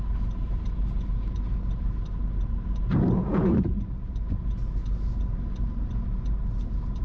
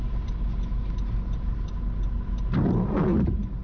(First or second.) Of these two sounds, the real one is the second